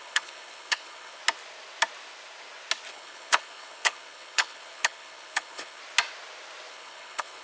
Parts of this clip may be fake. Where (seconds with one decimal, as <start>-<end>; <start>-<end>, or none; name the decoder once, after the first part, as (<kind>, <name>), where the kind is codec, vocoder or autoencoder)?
0.0-1.2 (codec, HILCodec); 2.9-5.8; 6.7-7.4

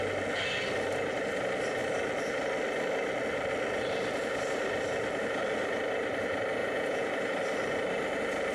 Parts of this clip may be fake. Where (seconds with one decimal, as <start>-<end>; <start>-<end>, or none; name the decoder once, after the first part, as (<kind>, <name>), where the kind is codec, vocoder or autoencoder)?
6.6-7.1 (vocoder, Vocos)

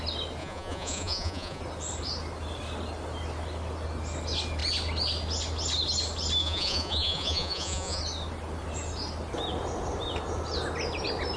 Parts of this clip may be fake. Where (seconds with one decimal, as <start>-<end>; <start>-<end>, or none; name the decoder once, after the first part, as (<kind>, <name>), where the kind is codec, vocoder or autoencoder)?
0.4-1.6 (vocoder, Vocos); 6.4-8.0

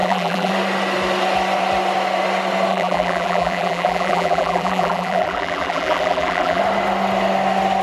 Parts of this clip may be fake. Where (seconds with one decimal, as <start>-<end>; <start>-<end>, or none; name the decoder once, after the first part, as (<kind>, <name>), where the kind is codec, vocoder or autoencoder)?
0.0-0.5 (vocoder, BigVGAN v2); 2.7-6.6

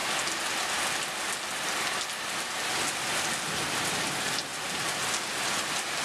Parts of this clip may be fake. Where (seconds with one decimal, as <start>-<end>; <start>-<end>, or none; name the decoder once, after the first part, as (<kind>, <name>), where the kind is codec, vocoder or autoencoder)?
none

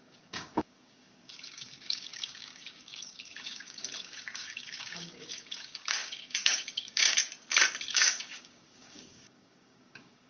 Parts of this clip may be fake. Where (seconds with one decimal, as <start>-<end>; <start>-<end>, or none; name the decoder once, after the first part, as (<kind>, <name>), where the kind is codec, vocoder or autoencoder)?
0.0-7.2 (codec, DAC); 7.9-10.3

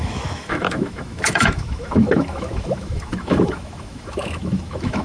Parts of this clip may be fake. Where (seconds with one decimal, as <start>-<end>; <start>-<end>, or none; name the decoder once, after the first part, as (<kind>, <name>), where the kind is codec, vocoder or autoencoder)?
0.0-5.0 (autoencoder, DAC-VAE)

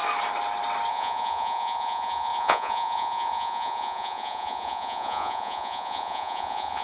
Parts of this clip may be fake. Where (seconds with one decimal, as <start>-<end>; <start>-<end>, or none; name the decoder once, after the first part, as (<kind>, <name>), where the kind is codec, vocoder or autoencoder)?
0.9-6.8 (vocoder, Vocos)